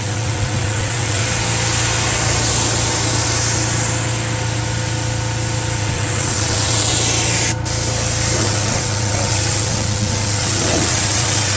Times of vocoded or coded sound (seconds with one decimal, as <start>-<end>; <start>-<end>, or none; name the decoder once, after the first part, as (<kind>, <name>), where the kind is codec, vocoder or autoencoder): 0.0-1.2 (vocoder, WaveNeXt); 5.8-6.9; 8.4-11.6